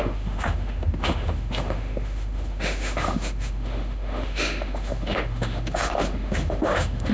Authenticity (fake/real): fake